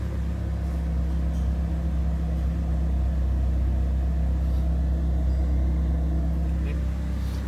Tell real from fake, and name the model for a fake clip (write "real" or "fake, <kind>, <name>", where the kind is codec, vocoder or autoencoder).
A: real